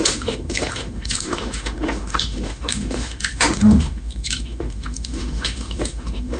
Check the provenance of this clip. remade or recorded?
remade